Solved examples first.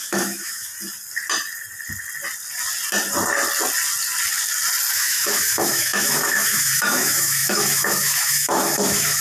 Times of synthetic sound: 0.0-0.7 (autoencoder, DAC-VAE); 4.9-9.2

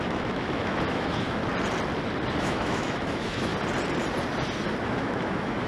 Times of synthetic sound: 0.0-1.4 (autoencoder, DAC-VAE); 2.4-3.5; 4.8-5.7